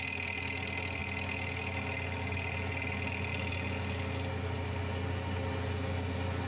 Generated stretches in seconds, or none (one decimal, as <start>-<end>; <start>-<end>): none